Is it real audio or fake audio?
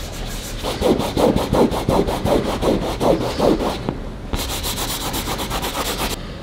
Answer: real